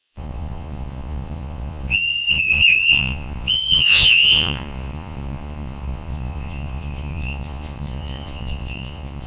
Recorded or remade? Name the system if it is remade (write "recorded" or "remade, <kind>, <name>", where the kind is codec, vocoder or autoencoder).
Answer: remade, vocoder, Vocos